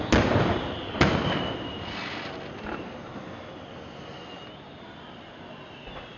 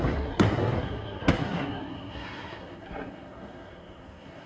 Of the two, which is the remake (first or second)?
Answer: second